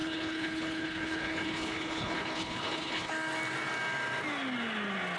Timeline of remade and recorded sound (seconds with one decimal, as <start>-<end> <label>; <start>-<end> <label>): 0.0-3.1 remade; 3.1-5.2 recorded